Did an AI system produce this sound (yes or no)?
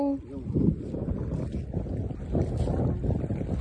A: no